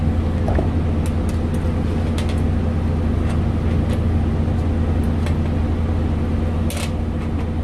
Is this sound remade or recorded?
recorded